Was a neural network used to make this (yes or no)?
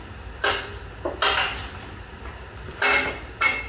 no